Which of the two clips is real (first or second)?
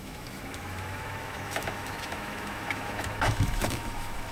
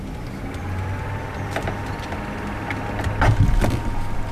second